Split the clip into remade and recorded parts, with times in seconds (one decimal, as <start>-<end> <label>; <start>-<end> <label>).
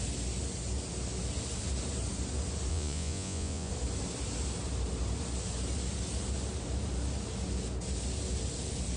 0.0-2.7 recorded; 2.7-3.7 remade; 3.7-9.0 recorded